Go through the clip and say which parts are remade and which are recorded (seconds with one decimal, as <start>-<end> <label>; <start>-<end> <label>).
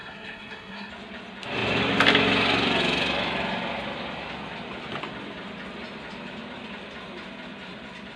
0.0-0.9 remade; 0.9-8.2 recorded